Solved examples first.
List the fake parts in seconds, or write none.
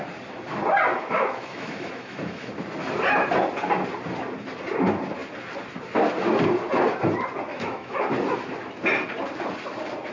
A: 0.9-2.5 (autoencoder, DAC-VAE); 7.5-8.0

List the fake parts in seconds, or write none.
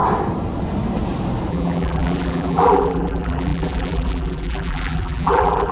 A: 1.5-5.7 (vocoder, BigVGAN v2)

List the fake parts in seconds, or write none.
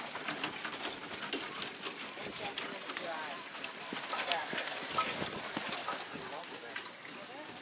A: none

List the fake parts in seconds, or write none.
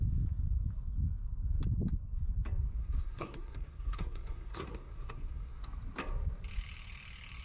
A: 2.8-5.6 (codec, SNAC)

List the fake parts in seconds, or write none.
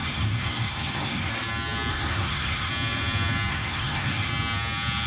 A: 0.0-1.3 (codec, SNAC); 1.9-2.7; 3.5-4.3